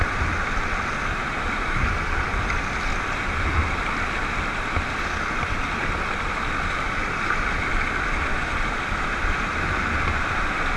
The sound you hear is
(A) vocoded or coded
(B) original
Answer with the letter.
B